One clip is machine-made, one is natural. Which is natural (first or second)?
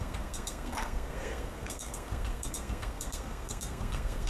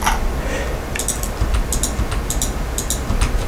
second